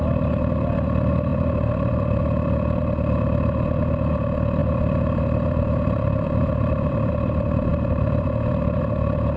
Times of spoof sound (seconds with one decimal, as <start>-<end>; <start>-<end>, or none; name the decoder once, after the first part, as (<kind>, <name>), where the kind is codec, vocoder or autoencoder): 1.3-2.2 (vocoder, BigVGAN v2); 4.6-7.1; 7.7-8.8